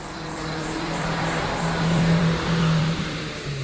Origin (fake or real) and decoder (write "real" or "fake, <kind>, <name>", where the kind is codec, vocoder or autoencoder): fake, vocoder, BigVGAN v2